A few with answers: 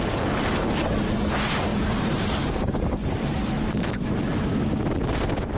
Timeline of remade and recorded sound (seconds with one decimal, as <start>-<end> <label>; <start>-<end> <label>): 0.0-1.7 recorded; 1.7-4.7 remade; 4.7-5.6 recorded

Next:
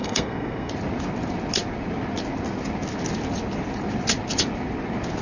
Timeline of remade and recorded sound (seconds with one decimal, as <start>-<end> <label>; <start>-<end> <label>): 0.0-0.7 remade; 0.7-5.2 recorded

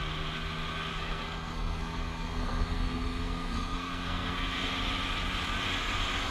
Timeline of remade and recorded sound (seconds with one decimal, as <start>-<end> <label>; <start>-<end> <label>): 0.0-0.9 recorded; 0.9-4.7 remade; 4.7-6.3 recorded